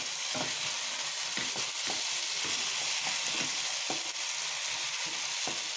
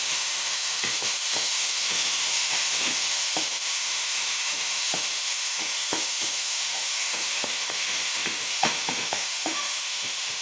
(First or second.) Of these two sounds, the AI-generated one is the second